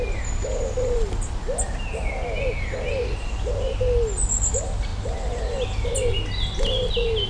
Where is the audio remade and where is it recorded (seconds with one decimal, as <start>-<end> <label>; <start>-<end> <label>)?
0.0-7.3 recorded